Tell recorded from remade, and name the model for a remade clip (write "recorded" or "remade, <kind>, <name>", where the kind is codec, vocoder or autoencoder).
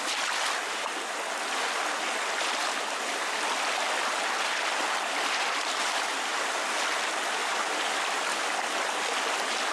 recorded